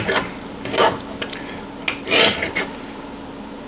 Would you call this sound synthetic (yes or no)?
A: no